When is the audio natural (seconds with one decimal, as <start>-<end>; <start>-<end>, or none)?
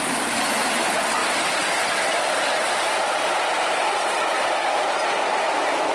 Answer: 0.0-1.2; 4.7-5.9